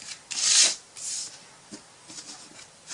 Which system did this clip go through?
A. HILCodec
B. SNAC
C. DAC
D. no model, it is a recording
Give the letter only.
D